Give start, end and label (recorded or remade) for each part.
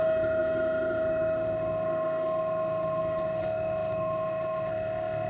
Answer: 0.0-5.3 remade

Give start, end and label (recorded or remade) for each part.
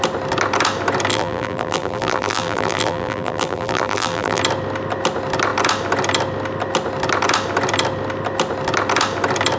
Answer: 0.0-1.1 recorded; 1.1-4.4 remade; 4.4-9.6 recorded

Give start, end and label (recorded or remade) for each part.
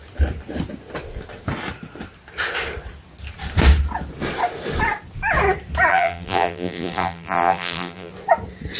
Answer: 0.0-5.9 recorded; 5.9-8.1 remade; 8.1-8.8 recorded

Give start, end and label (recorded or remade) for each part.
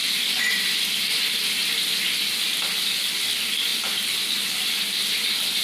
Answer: 0.0-5.6 recorded